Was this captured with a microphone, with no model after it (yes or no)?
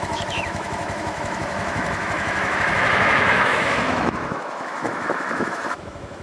no